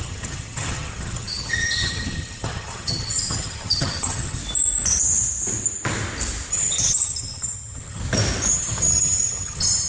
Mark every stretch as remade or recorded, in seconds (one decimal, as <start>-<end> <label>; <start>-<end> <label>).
0.0-4.4 remade; 4.4-6.5 recorded; 6.5-8.0 remade; 8.0-8.5 recorded; 8.5-9.9 remade